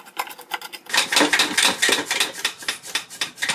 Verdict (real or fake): real